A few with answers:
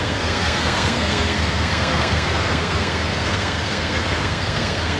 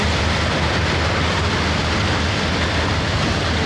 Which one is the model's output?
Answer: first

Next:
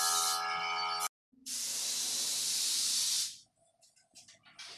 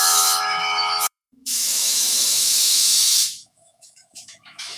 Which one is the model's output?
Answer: second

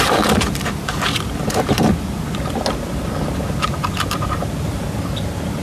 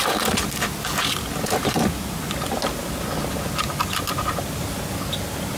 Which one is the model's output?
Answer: first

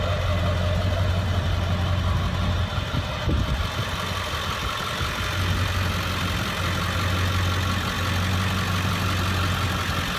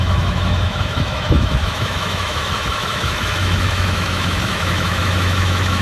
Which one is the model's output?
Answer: second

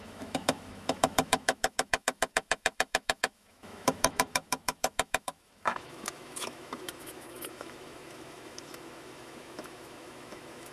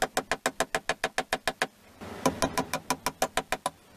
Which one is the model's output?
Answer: first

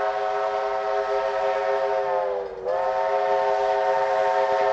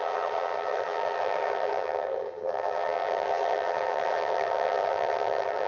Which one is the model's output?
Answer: second